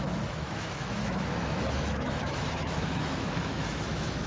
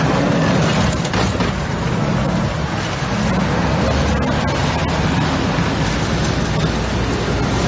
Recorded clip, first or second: second